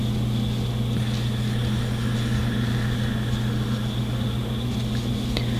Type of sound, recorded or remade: recorded